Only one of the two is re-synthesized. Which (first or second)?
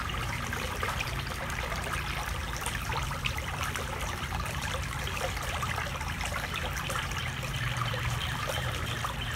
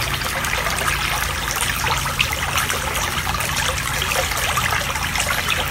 first